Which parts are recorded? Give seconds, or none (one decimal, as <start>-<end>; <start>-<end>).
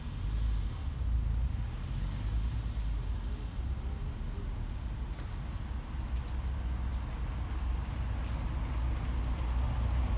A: 0.0-10.2